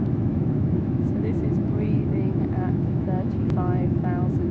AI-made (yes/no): yes